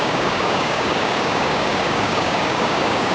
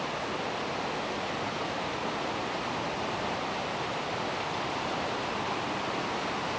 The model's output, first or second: first